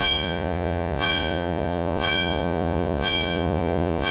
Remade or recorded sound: remade